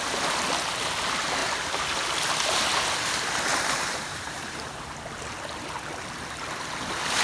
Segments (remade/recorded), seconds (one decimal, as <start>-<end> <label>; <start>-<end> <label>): 0.0-3.5 recorded; 3.5-4.6 remade; 4.6-7.2 recorded